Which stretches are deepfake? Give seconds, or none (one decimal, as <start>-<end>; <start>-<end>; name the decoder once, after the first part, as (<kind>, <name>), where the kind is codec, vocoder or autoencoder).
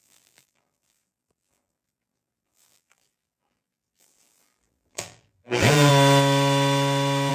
0.0-5.9 (vocoder, BigVGAN v2)